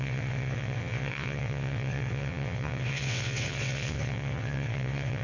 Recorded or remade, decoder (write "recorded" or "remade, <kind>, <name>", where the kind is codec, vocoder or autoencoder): remade, vocoder, WaveNeXt